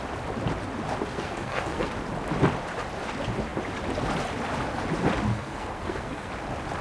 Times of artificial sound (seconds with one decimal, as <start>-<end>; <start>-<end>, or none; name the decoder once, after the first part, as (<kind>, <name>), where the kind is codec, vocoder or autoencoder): 1.1-1.9 (codec, SNAC); 5.3-6.3